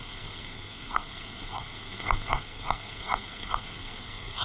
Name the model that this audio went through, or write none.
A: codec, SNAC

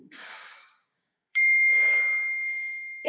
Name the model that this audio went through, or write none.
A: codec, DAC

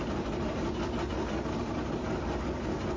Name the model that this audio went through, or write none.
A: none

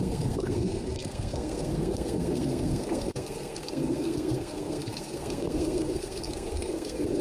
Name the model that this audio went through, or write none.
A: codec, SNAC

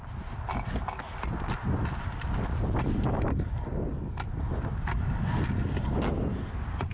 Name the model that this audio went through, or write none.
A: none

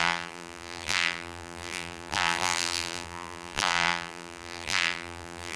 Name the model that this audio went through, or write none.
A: vocoder, BigVGAN v2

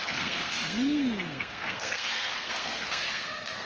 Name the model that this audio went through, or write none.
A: codec, SNAC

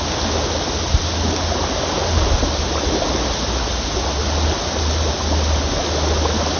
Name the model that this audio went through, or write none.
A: none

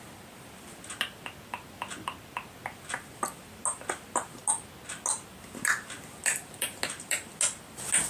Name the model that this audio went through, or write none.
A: none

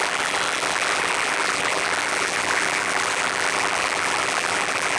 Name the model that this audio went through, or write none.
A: vocoder, BigVGAN v2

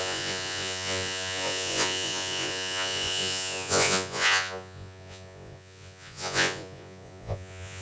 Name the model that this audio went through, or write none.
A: vocoder, Vocos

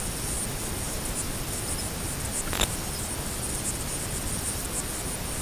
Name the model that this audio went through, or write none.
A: none